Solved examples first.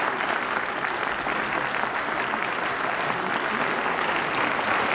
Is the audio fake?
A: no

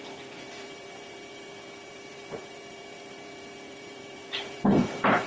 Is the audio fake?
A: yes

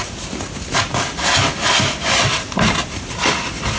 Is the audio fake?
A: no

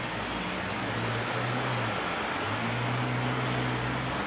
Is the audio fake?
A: no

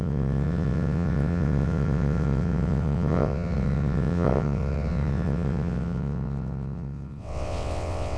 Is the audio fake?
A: yes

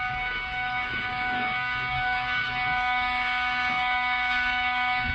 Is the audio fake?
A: yes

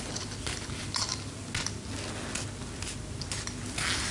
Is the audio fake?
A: no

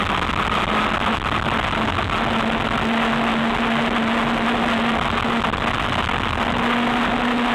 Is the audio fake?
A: no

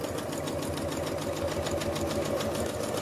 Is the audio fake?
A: no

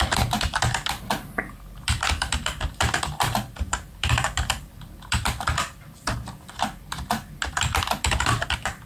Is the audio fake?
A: yes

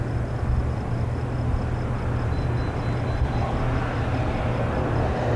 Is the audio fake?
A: no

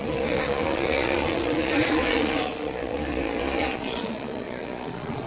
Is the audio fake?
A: yes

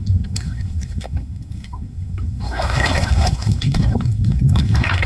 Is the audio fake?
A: yes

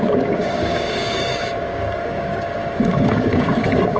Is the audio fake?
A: yes